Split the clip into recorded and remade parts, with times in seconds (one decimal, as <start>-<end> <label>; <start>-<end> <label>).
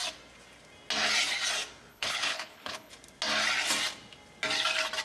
0.0-1.9 recorded; 1.9-2.9 remade; 2.9-5.0 recorded